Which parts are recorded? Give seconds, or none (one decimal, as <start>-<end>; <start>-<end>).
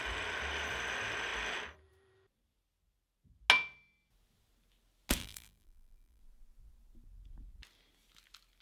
0.0-5.2; 6.2-8.6